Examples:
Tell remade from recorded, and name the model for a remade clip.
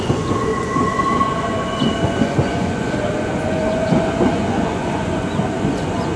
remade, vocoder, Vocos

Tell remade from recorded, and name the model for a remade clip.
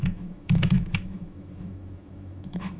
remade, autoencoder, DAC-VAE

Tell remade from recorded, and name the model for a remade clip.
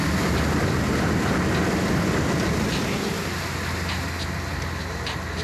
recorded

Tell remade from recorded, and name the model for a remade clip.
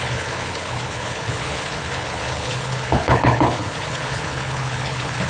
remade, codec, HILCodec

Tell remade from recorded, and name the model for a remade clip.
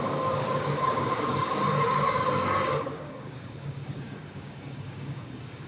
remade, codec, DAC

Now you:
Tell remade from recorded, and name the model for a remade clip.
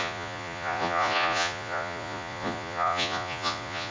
remade, vocoder, Vocos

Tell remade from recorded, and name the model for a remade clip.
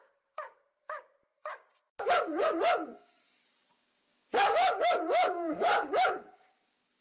remade, codec, DAC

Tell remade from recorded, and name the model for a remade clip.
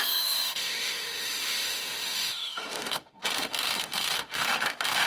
remade, autoencoder, DAC-VAE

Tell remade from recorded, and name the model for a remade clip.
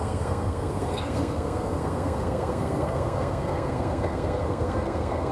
remade, codec, SNAC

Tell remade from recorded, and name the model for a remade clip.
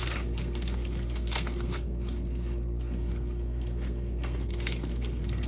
remade, codec, SNAC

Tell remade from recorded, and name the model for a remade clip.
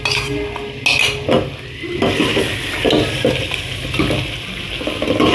recorded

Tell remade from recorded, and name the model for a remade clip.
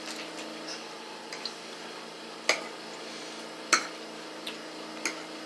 recorded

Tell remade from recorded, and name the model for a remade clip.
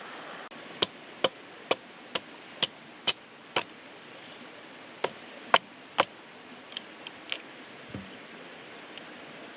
recorded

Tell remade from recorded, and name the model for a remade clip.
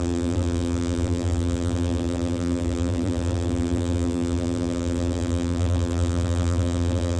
remade, vocoder, BigVGAN v2